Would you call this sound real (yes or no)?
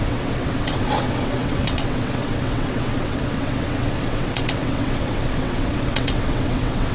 no